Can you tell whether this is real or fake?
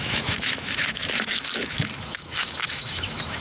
fake